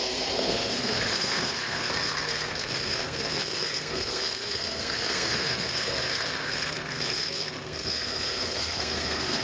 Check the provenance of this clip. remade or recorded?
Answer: remade